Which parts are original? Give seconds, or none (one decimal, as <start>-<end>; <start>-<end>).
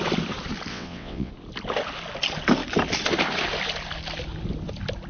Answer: 0.0-0.7; 1.3-5.1